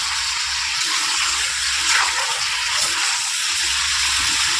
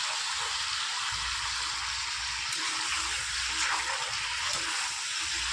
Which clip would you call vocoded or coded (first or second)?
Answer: first